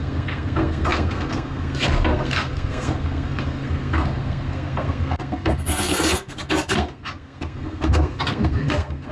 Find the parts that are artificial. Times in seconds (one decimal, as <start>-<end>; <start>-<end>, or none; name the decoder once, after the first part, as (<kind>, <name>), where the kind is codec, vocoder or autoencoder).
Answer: 0.0-9.1 (codec, SNAC)